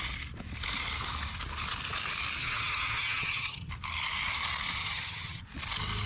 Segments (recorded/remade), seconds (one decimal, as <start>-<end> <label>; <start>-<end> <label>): 0.0-2.4 recorded; 2.4-3.7 remade; 3.7-4.8 recorded; 4.8-5.4 remade; 5.4-6.1 recorded